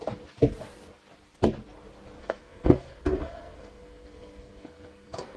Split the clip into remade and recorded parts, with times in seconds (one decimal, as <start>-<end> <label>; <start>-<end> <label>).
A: 0.0-2.2 recorded; 2.2-5.4 remade

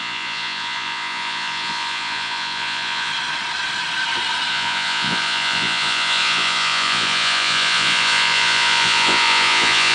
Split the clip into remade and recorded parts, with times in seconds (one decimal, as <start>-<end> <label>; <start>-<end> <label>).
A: 0.0-3.1 remade; 3.1-4.5 recorded; 4.5-9.9 remade

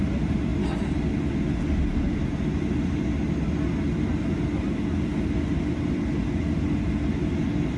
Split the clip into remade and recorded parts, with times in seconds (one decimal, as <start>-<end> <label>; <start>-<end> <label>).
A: 0.0-7.8 recorded

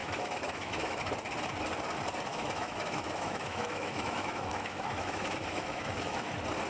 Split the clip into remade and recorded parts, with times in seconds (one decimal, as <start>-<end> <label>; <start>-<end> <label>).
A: 0.0-1.0 remade; 1.0-2.3 recorded; 2.3-6.3 remade; 6.3-6.7 recorded

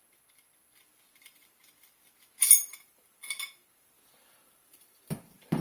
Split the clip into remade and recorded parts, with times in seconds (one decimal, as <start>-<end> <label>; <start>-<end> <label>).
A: 0.0-2.7 recorded; 2.7-5.6 remade

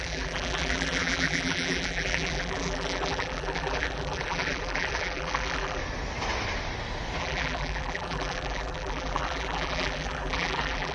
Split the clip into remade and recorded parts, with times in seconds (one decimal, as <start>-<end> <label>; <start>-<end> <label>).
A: 0.0-5.8 remade; 5.8-7.2 recorded; 7.2-10.9 remade

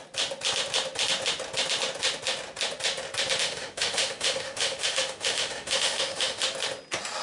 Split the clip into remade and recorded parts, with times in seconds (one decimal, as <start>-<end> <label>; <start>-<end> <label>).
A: 0.0-3.4 recorded; 3.4-6.4 remade; 6.4-7.2 recorded

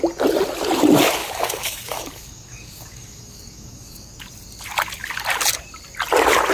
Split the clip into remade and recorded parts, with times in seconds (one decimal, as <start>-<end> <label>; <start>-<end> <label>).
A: 0.0-1.2 recorded; 1.2-4.1 remade; 4.1-6.5 recorded